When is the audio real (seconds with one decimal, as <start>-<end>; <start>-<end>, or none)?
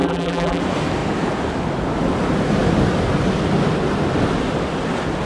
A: 0.6-5.3